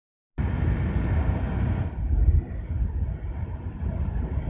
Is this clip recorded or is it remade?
recorded